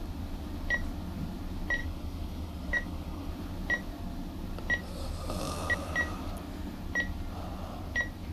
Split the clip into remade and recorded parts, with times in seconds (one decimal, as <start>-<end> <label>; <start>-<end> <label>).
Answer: 0.0-1.8 recorded; 1.8-3.3 remade; 3.3-8.3 recorded